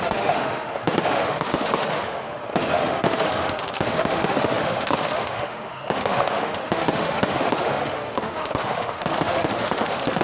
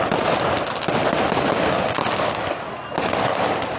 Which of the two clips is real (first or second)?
second